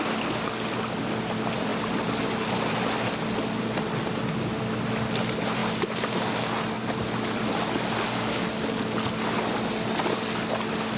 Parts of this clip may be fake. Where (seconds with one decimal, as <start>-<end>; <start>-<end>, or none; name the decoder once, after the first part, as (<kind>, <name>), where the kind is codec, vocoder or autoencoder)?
none